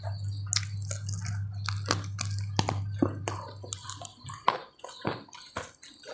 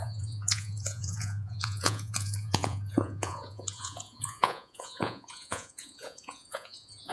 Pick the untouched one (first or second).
first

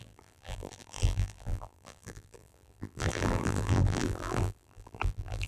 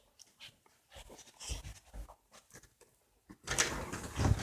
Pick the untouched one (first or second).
second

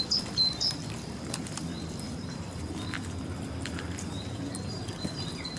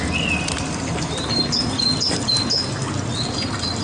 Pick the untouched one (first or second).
second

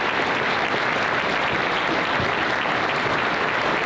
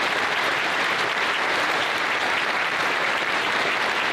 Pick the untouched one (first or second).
first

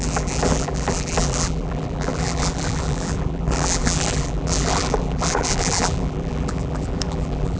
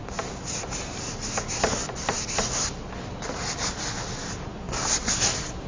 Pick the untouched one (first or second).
second